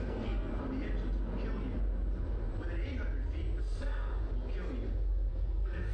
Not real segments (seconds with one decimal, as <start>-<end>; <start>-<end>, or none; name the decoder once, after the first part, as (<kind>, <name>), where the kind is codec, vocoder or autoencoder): 0.0-0.5 (codec, SNAC); 3.6-4.1; 5.3-5.9